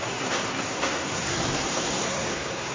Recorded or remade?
remade